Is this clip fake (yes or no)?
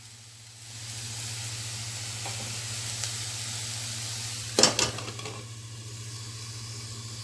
no